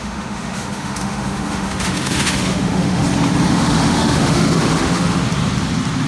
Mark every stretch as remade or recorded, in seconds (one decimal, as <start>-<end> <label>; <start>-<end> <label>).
0.0-3.0 remade; 3.0-3.5 recorded; 3.5-5.2 remade; 5.2-6.1 recorded